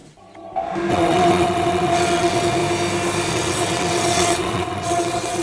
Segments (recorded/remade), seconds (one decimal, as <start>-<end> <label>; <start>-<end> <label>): 0.0-0.9 recorded; 0.9-2.6 remade; 2.6-3.3 recorded; 3.3-5.4 remade